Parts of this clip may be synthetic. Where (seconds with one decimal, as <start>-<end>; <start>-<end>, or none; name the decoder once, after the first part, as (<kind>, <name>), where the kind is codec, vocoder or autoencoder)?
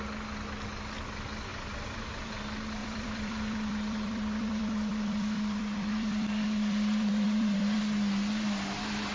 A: 1.5-2.3 (vocoder, BigVGAN v2); 2.8-7.8